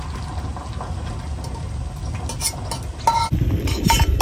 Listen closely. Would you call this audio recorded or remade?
recorded